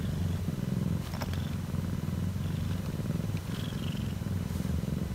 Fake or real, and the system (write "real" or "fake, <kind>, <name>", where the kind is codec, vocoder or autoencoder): fake, vocoder, BigVGAN v2